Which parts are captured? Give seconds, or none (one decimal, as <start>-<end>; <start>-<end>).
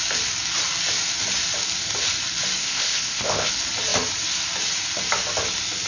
0.0-2.6; 3.5-5.9